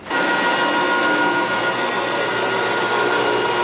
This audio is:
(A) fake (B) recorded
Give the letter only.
B